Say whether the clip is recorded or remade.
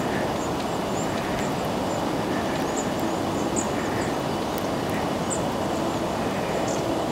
recorded